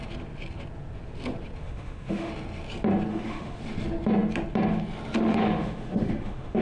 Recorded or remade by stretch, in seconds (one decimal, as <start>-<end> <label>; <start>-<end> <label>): 0.0-1.6 recorded; 1.6-2.3 remade; 2.3-3.1 recorded; 3.1-3.6 remade; 3.6-5.2 recorded; 5.2-6.6 remade